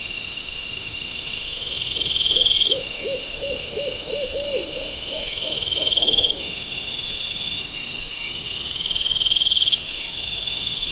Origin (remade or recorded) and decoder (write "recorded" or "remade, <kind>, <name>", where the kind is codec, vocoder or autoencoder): remade, autoencoder, DAC-VAE